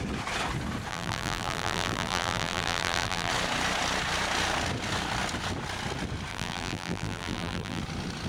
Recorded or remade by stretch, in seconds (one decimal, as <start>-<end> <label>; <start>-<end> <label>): 0.0-0.9 recorded; 0.9-3.3 remade; 3.3-6.3 recorded; 6.3-7.8 remade; 7.8-8.3 recorded